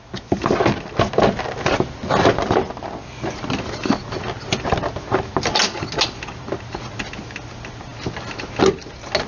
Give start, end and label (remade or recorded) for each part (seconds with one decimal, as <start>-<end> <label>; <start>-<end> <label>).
0.0-9.3 recorded